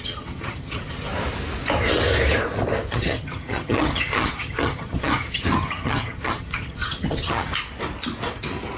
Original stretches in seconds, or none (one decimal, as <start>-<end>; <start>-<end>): 1.1-2.9; 7.5-8.8